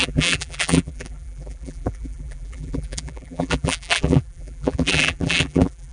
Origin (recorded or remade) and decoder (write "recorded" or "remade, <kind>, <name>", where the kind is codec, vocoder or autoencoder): remade, vocoder, BigVGAN v2